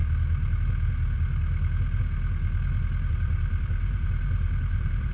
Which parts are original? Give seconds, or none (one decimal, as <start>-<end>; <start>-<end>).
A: 0.0-3.1